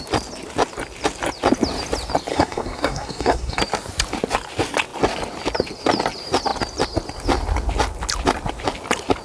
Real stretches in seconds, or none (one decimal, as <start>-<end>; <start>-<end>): 0.0-2.3; 3.6-9.2